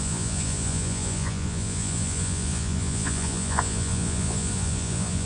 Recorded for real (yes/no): no